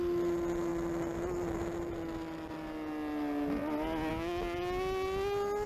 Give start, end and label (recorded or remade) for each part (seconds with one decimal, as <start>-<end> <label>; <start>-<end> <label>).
0.0-5.7 recorded